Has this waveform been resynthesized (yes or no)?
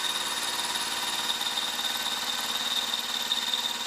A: no